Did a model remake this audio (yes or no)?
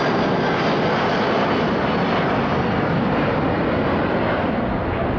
no